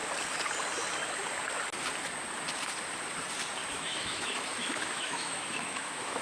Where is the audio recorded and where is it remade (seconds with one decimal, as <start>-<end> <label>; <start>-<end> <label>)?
0.0-3.7 recorded; 3.7-6.2 remade